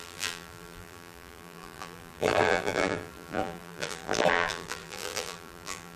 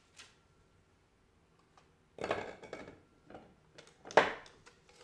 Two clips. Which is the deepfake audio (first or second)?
first